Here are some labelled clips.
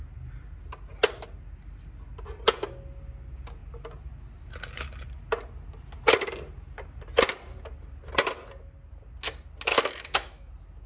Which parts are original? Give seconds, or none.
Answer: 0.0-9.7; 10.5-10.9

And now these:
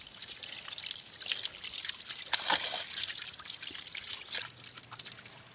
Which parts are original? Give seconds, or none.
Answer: 0.0-5.5

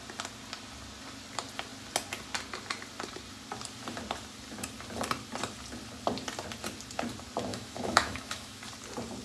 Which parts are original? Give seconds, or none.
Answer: 0.0-7.5; 8.6-9.2

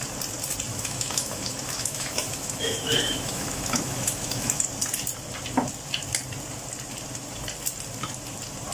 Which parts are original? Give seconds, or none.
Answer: 0.0-0.7; 4.6-8.7

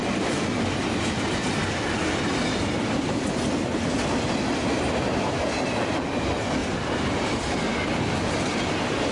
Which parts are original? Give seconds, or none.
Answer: 0.0-9.1

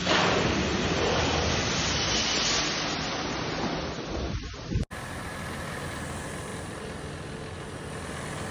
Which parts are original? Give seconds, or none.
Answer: 0.0-8.5

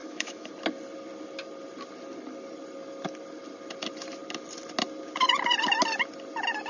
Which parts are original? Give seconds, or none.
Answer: 0.5-6.7